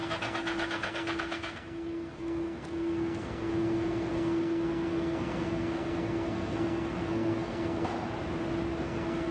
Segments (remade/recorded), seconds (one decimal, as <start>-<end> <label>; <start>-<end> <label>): 0.0-7.9 remade; 7.9-8.8 recorded; 8.8-9.3 remade